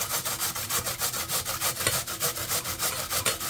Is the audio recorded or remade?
recorded